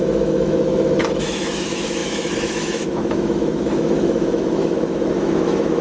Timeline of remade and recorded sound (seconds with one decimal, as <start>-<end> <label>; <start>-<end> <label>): 0.0-5.8 remade